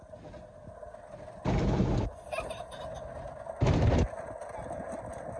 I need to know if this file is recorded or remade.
recorded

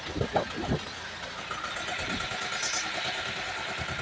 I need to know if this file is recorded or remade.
recorded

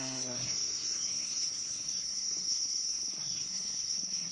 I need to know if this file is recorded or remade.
remade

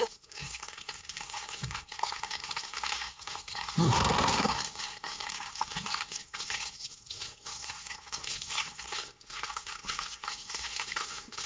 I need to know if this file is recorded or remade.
remade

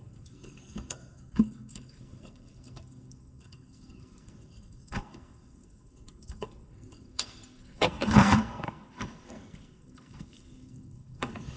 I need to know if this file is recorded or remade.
remade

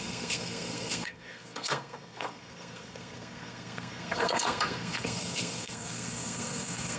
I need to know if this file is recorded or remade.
remade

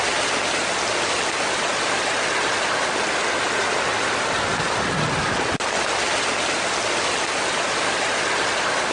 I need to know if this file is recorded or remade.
recorded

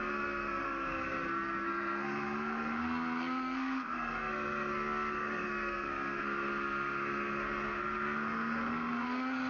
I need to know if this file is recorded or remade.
remade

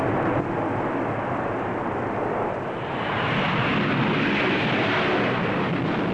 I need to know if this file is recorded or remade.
recorded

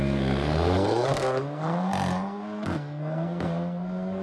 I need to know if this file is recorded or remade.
remade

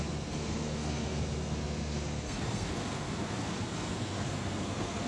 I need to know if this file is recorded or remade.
remade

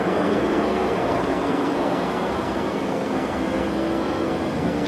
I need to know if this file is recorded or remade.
remade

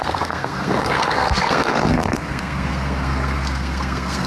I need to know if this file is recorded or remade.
remade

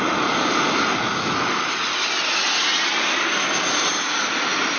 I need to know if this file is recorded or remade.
recorded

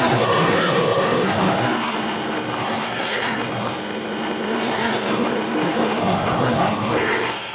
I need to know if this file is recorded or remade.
remade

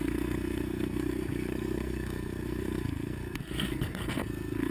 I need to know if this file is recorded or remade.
remade